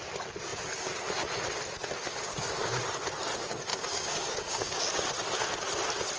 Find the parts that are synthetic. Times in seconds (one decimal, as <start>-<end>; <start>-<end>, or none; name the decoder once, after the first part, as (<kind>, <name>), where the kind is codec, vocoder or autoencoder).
2.3-2.8 (codec, DAC); 3.7-4.8